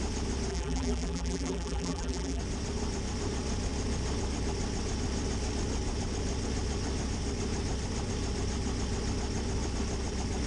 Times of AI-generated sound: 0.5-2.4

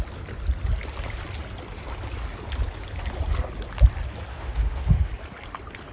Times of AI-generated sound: 4.3-5.1

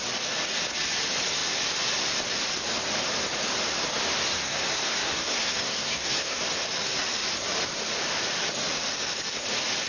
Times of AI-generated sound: 4.4-6.4

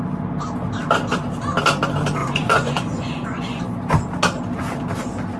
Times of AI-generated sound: 2.2-3.6